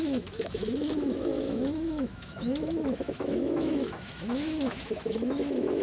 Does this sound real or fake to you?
fake